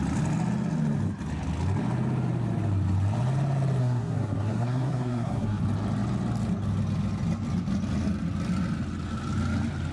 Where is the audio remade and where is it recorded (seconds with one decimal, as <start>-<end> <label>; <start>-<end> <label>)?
0.0-3.8 recorded; 3.8-5.6 remade; 5.6-9.9 recorded